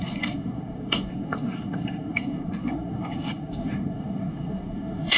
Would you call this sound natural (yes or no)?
no